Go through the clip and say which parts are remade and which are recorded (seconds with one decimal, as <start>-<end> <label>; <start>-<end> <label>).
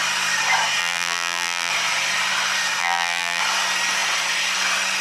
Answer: 0.0-0.8 recorded; 0.8-1.7 remade; 1.7-2.8 recorded; 2.8-3.4 remade; 3.4-5.0 recorded